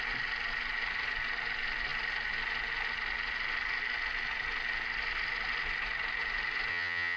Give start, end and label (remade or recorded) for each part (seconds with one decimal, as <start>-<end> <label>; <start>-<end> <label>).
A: 0.0-6.7 recorded; 6.7-7.2 remade